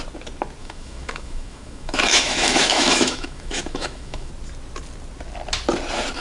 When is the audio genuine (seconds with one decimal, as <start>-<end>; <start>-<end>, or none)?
0.0-0.6; 4.3-6.2